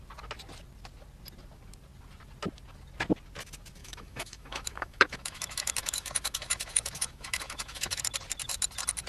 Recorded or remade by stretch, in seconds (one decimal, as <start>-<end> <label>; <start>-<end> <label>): 0.0-3.8 recorded; 3.8-8.0 remade; 8.0-9.1 recorded